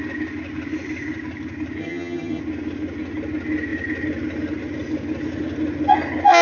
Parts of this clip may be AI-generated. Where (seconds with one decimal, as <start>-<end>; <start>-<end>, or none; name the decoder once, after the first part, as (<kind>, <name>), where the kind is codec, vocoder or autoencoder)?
1.8-2.4 (vocoder, HiFi-GAN)